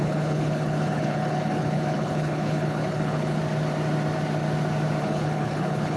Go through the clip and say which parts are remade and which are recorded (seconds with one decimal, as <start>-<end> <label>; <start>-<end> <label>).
0.0-3.4 remade; 3.4-5.0 recorded; 5.0-6.0 remade